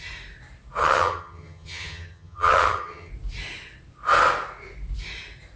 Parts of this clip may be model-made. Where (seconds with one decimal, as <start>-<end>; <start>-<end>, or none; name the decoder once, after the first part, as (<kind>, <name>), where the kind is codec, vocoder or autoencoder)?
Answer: 0.8-3.1 (vocoder, HiFi-GAN)